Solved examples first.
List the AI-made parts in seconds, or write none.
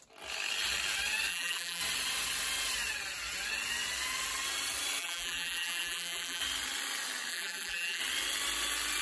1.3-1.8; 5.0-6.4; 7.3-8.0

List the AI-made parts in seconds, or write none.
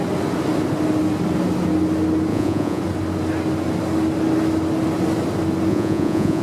2.3-2.8; 5.7-6.4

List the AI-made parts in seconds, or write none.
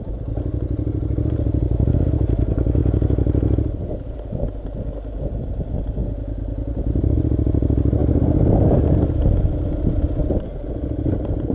none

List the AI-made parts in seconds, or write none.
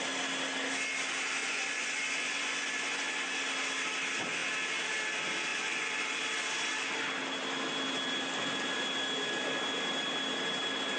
1.4-3.4; 5.5-6.2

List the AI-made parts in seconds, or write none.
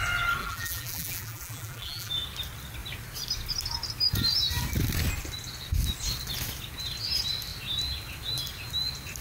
0.4-2.1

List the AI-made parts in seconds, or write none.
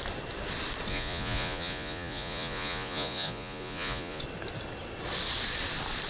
0.9-4.2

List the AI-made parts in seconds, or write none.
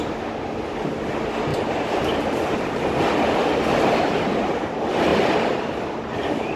1.5-2.7; 5.1-6.6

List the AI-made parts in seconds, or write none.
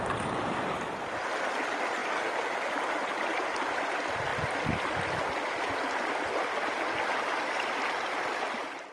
none